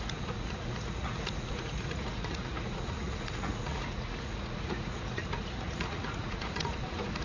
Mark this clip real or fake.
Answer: fake